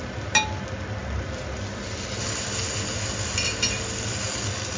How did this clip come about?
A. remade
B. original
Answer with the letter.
B